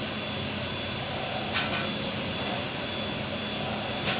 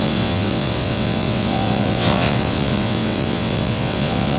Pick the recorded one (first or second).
first